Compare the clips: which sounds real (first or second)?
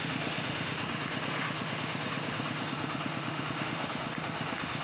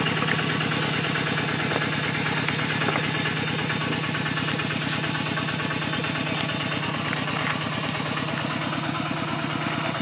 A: second